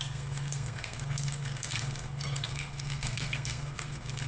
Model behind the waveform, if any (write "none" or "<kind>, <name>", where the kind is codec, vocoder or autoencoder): codec, SNAC